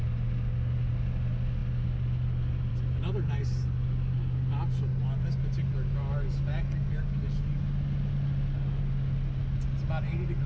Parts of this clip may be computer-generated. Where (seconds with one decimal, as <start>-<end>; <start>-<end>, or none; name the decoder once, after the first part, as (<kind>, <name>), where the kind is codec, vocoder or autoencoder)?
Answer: none